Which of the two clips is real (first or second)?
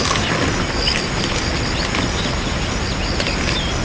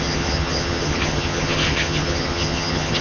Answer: first